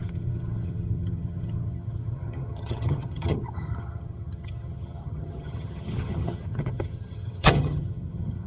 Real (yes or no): no